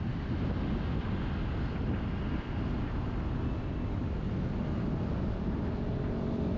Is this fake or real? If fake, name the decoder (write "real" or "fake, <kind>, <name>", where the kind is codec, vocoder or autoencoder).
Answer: real